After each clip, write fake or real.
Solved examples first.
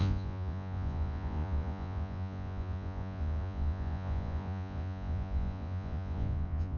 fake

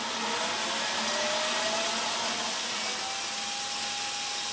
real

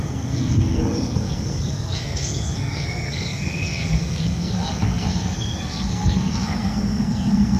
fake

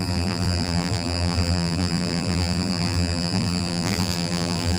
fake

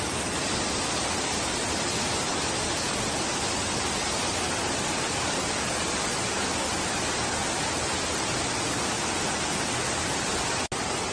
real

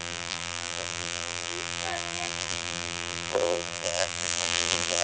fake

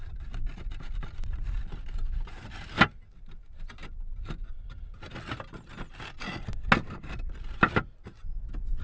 real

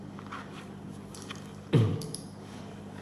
fake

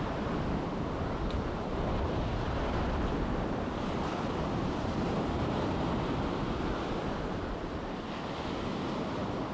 fake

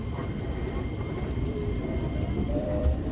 fake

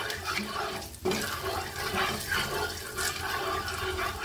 real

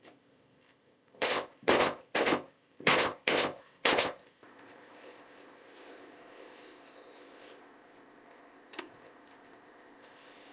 fake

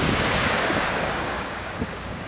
fake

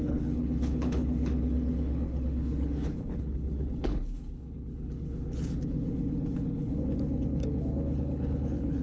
fake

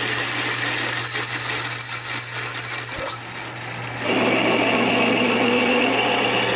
real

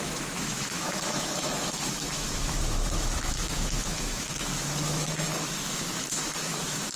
fake